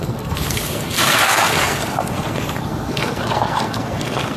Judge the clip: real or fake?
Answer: fake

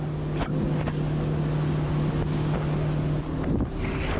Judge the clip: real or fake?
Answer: real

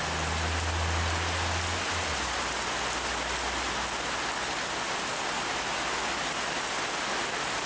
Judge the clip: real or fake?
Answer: real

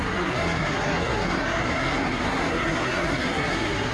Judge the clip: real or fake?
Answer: fake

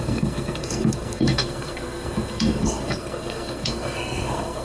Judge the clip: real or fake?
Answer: fake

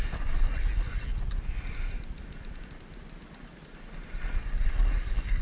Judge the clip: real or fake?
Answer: real